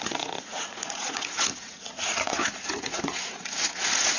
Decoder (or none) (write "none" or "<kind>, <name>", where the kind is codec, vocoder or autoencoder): vocoder, Vocos